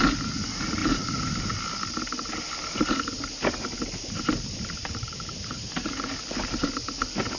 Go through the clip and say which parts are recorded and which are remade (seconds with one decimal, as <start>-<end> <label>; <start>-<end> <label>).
0.0-0.8 recorded; 0.8-1.4 remade; 1.4-4.8 recorded; 4.8-6.1 remade; 6.1-7.4 recorded